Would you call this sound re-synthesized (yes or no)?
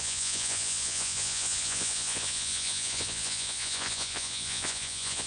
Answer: yes